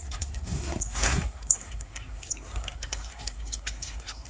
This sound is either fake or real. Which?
fake